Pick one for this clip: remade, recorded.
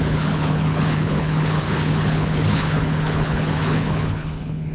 remade